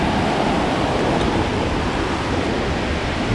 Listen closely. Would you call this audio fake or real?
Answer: real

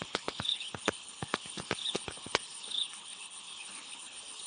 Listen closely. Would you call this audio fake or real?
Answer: fake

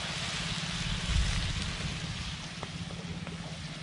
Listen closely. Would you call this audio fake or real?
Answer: real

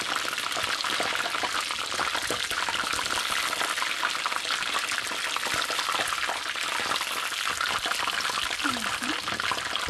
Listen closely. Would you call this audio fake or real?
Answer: real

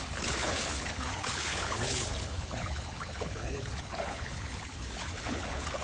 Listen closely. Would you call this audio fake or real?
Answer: fake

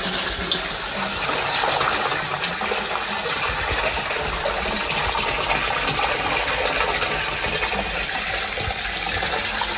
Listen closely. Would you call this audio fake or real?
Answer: real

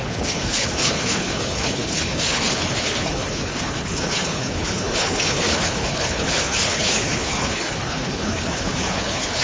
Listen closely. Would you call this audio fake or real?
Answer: fake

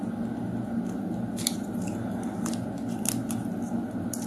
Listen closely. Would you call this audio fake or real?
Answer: real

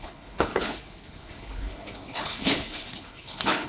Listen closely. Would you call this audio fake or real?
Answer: fake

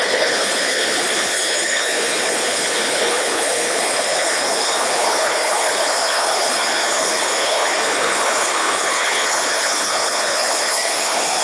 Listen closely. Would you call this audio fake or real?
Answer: fake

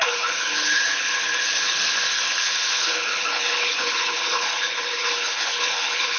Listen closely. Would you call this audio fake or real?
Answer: fake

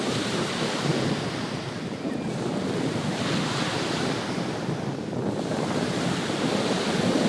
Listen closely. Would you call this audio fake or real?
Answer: real